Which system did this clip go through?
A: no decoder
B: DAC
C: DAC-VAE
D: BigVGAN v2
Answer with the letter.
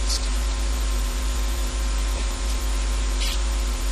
D